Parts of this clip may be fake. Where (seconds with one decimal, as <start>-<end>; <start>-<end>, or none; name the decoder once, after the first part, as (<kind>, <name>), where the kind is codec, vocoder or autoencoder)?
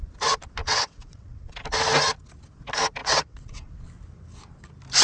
0.6-1.5 (vocoder, WaveNeXt); 3.0-3.8